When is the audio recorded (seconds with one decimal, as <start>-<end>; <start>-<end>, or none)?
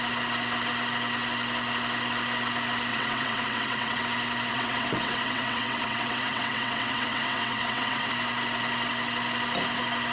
0.0-2.9; 4.0-4.5; 8.1-10.1